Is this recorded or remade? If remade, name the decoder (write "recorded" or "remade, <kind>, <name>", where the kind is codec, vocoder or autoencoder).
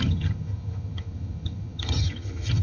remade, vocoder, HiFi-GAN